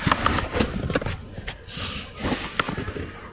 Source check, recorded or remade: recorded